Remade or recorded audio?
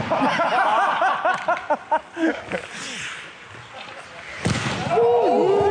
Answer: recorded